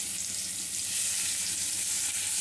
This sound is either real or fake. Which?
real